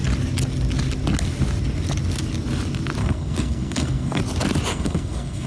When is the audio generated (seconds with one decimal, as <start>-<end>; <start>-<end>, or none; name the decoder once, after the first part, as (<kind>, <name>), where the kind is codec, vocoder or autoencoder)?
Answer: 3.0-4.2 (codec, SNAC); 4.7-5.5